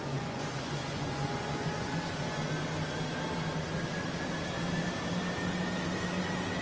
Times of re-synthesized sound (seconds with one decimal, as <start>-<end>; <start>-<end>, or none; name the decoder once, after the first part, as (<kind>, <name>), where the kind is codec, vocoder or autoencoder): 0.0-2.4 (vocoder, Vocos)